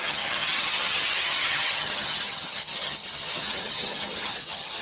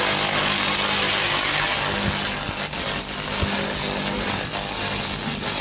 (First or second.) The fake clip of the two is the first